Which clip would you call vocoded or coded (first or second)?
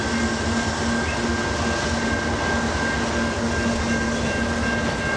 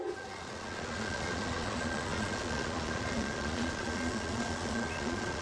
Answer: second